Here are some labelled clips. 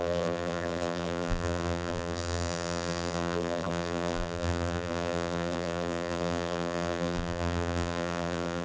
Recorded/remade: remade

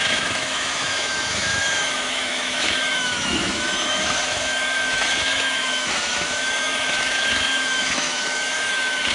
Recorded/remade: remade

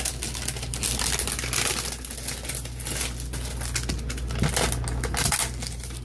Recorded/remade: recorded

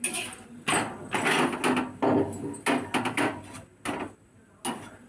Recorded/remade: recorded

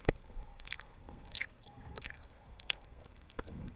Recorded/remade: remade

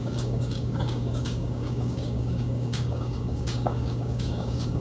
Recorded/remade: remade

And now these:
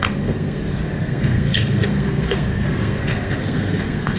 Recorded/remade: remade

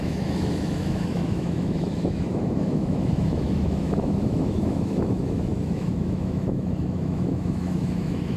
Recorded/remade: remade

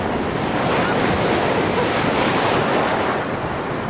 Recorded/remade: recorded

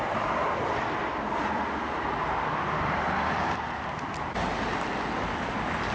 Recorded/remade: recorded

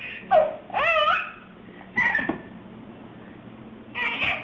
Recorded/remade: recorded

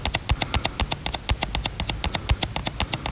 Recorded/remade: recorded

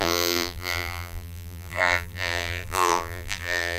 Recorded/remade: remade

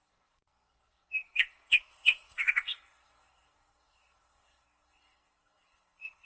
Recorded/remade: remade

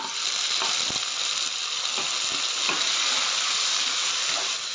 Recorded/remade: recorded